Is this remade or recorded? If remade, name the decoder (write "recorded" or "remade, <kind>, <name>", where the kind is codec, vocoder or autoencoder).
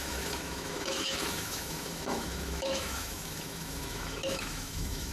remade, autoencoder, DAC-VAE